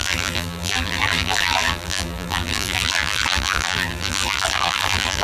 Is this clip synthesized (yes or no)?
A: yes